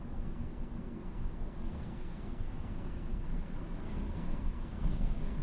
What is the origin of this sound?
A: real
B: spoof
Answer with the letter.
B